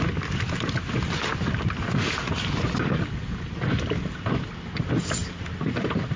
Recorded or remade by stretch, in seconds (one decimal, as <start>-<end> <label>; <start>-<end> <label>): 0.0-6.2 recorded